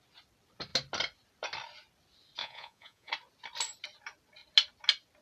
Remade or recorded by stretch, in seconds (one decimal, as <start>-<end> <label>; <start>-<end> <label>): 0.0-2.4 recorded; 2.4-3.1 remade; 3.1-5.2 recorded